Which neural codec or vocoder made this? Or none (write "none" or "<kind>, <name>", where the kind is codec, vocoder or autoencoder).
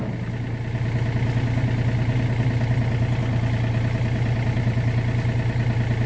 none